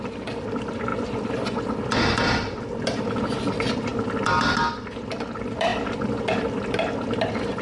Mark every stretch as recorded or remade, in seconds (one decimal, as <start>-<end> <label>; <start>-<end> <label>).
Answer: 0.0-7.6 recorded